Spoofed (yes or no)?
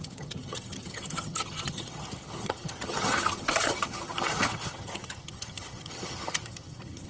yes